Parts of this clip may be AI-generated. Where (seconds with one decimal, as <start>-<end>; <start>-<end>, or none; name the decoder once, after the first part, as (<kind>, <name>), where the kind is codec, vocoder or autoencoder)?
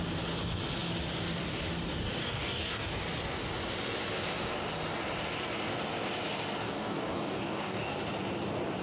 2.2-2.9 (codec, DAC); 6.6-8.0